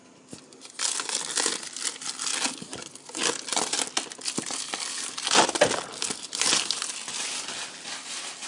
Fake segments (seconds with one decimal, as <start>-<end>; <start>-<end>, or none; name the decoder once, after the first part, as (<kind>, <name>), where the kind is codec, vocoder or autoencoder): none